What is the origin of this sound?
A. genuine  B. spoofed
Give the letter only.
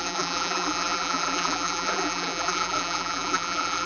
B